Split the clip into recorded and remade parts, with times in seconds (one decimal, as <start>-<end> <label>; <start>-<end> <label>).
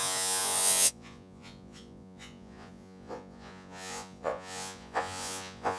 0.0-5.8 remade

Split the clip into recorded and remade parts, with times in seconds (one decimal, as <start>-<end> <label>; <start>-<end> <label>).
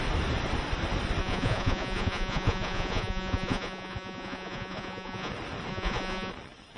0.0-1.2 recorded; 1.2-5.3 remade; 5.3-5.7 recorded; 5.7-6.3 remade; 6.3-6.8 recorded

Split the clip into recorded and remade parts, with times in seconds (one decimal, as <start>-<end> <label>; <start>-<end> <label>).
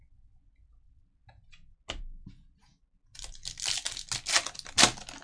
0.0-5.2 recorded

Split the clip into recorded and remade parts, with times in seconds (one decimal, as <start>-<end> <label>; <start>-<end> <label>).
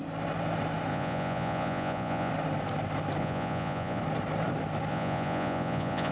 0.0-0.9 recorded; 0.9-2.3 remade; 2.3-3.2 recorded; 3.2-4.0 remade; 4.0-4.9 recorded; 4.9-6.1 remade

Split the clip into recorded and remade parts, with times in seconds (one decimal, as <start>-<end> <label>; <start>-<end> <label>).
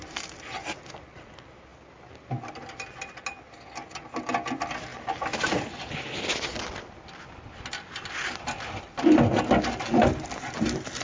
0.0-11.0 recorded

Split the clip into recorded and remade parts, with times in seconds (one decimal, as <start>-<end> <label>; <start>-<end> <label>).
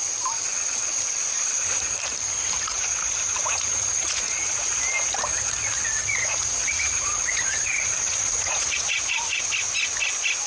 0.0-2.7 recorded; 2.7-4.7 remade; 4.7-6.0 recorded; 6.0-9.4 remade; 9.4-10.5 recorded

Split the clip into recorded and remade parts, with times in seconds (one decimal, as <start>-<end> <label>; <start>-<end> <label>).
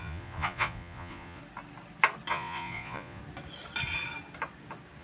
0.0-1.4 remade; 1.4-2.3 recorded; 2.3-3.2 remade; 3.2-5.0 recorded